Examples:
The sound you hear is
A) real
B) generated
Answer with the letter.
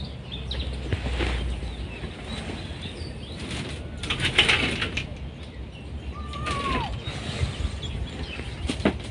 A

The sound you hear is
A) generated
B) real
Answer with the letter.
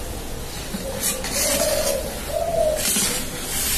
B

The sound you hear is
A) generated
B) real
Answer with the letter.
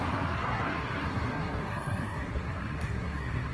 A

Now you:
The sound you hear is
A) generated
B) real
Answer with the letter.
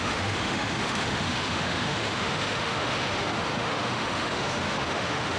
A